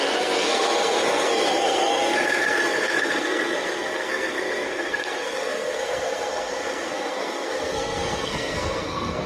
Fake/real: fake